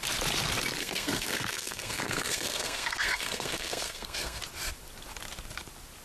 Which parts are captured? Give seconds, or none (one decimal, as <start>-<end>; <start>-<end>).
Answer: 0.0-0.8; 4.4-6.0